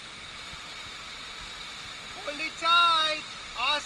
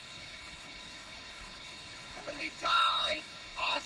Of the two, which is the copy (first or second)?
second